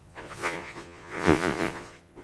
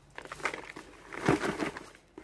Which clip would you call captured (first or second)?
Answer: second